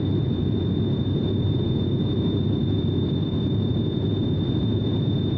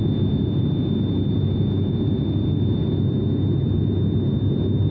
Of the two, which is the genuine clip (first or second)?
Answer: second